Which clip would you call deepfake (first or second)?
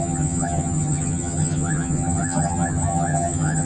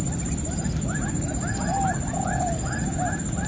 first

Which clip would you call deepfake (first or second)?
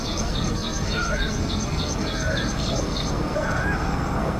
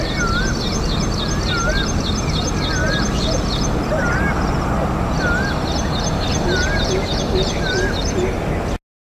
first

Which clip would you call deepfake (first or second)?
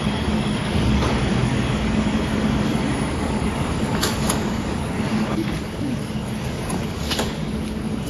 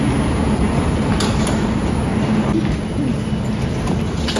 first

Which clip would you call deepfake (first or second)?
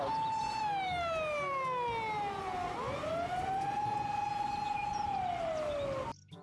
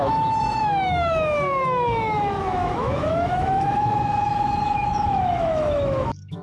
second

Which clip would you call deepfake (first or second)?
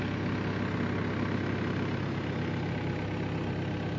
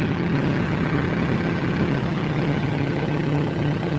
second